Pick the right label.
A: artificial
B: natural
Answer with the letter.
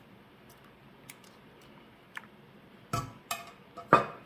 B